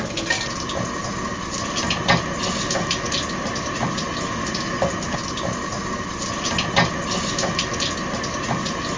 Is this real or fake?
real